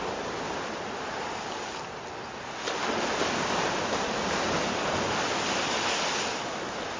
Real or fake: real